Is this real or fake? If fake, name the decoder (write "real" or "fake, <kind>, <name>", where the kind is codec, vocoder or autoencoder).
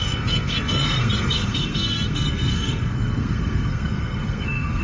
fake, codec, SNAC